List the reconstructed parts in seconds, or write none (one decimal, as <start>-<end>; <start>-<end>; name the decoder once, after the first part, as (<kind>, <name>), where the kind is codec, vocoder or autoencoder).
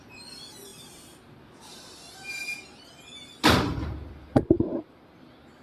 none